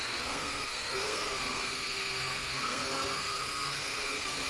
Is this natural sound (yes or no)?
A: no